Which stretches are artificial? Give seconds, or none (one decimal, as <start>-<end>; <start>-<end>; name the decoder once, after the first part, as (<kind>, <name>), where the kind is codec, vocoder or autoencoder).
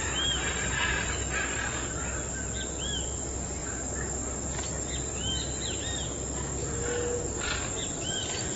none